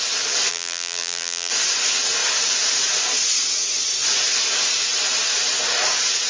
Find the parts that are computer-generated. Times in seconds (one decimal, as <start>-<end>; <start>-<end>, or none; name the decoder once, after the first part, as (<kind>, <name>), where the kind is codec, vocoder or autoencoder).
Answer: 0.5-1.5 (vocoder, BigVGAN v2)